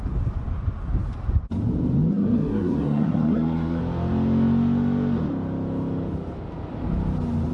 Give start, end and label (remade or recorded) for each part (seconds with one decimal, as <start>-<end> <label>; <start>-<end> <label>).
0.0-2.1 recorded; 2.1-3.8 remade; 3.8-7.5 recorded